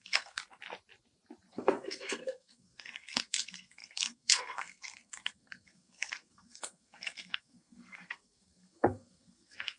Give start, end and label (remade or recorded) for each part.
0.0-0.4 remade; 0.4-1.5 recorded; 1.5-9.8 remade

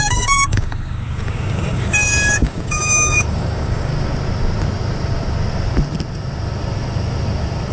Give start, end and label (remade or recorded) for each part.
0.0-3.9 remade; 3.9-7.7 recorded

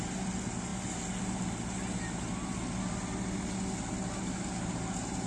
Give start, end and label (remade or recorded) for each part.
0.0-5.3 recorded

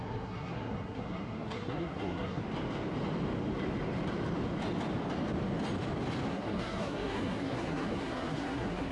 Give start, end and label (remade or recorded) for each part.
0.0-2.4 remade; 2.4-6.3 recorded; 6.3-8.9 remade